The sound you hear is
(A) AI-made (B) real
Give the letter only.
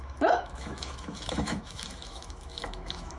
A